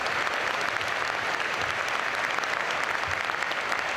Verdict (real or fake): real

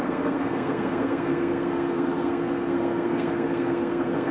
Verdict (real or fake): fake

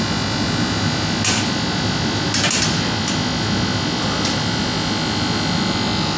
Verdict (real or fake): real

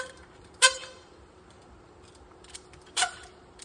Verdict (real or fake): fake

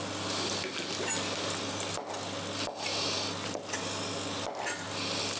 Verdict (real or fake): real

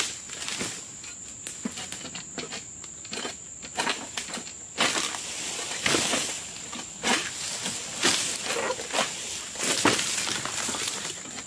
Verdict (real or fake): real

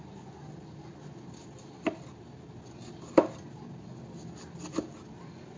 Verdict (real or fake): real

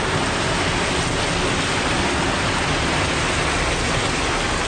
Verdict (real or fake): real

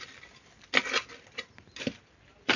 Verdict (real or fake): real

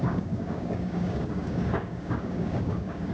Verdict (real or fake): fake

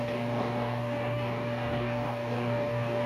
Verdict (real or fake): fake